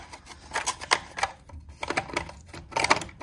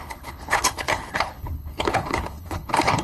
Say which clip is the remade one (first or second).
second